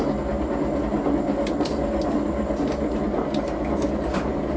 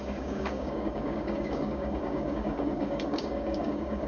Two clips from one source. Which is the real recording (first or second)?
first